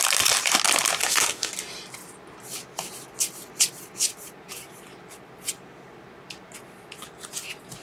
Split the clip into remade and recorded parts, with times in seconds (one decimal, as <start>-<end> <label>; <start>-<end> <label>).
0.0-1.0 recorded; 1.0-1.5 remade; 1.5-7.8 recorded